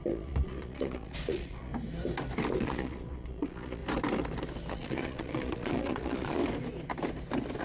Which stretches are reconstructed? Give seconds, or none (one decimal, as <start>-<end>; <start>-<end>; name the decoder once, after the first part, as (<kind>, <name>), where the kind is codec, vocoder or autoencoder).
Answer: 0.0-1.7 (vocoder, Vocos); 2.6-3.8; 4.7-6.4